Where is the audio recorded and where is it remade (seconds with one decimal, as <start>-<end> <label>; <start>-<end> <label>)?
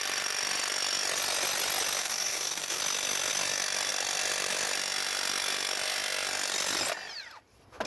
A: 0.0-2.0 recorded; 2.0-2.8 remade; 2.8-7.9 recorded